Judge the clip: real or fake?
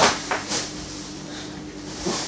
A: fake